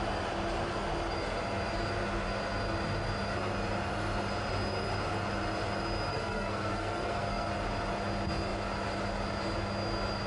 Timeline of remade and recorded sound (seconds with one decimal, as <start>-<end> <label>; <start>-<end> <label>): 0.0-6.1 recorded; 6.1-7.5 remade; 7.5-10.3 recorded